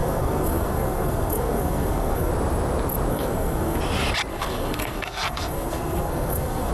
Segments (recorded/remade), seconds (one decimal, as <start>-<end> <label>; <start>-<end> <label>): 0.0-2.3 remade; 2.3-3.1 recorded; 3.1-3.8 remade; 3.8-4.3 recorded; 4.3-6.7 remade